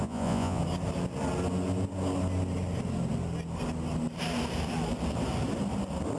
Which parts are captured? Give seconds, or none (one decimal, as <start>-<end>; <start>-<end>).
0.6-6.2